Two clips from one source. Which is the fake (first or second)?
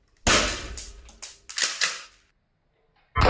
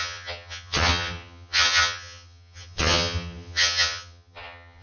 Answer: second